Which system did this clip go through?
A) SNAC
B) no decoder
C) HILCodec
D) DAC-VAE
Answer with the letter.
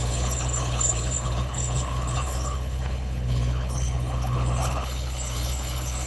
C